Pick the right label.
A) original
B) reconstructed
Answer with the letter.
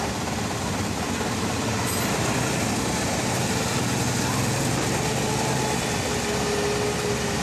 A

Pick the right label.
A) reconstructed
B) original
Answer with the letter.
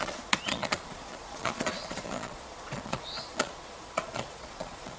A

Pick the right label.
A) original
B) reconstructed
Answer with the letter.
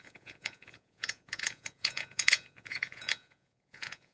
B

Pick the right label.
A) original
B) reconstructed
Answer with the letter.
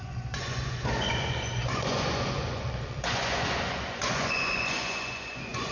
B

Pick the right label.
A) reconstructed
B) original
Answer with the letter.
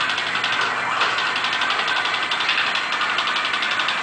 B